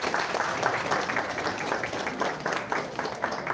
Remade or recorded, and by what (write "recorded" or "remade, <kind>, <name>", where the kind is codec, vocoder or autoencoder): remade, vocoder, BigVGAN v2